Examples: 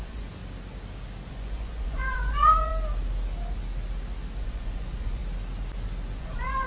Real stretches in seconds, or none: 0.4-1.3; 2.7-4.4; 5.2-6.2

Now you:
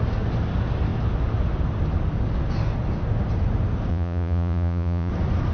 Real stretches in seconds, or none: 0.0-3.9; 5.1-5.5

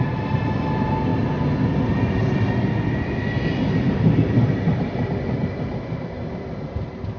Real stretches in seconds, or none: 0.0-7.2

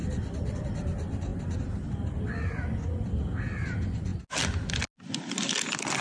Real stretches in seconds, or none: 0.0-6.0

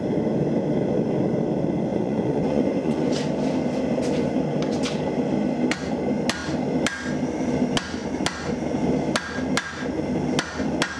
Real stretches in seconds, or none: 0.0-1.9; 3.1-11.0